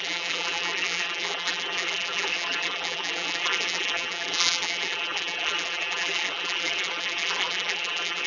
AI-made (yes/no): yes